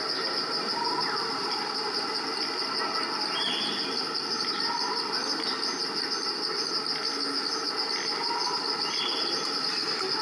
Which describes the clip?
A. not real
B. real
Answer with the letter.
B